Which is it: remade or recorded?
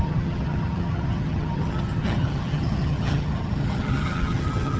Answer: remade